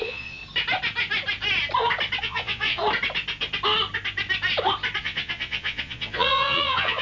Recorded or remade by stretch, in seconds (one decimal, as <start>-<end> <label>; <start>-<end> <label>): 0.0-0.4 remade; 0.4-2.2 recorded; 2.2-2.8 remade; 2.8-5.0 recorded; 5.0-7.0 remade